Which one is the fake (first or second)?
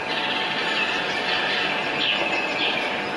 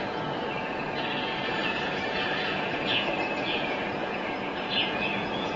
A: second